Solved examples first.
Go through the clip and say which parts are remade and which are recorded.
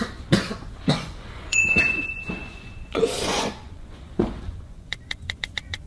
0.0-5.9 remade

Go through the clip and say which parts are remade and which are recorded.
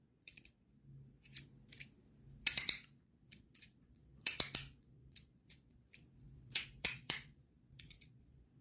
0.0-0.7 remade; 0.7-3.0 recorded; 3.0-4.3 remade; 4.3-4.8 recorded; 4.8-8.6 remade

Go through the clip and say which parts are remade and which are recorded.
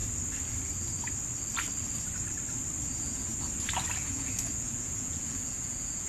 0.0-2.9 recorded; 2.9-3.3 remade; 3.3-4.0 recorded; 4.0-6.1 remade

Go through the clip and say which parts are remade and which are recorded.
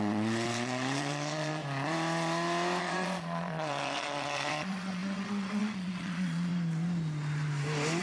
0.0-1.6 remade; 1.6-2.8 recorded; 2.8-6.5 remade; 6.5-8.0 recorded